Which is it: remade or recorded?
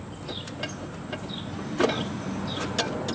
recorded